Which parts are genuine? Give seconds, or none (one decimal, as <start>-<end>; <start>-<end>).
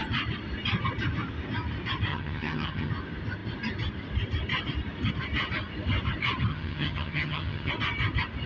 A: 0.0-2.1; 2.9-6.5; 7.7-8.5